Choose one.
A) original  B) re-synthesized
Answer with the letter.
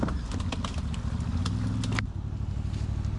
A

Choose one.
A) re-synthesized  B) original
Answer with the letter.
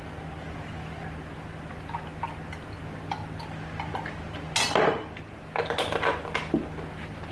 B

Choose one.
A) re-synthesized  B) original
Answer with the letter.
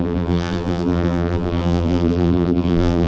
A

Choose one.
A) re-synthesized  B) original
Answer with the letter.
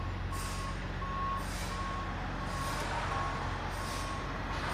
B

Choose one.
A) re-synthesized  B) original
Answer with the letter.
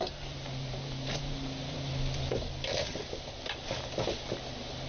A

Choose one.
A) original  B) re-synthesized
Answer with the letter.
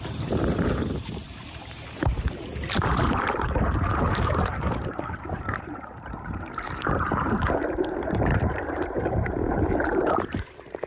B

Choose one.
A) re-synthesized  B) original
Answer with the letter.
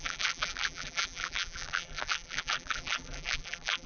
A